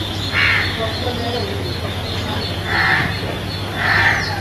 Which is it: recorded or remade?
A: recorded